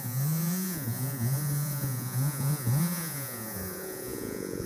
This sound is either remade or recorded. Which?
remade